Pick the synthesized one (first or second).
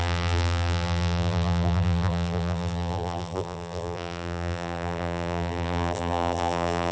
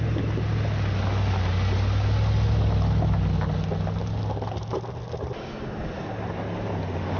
first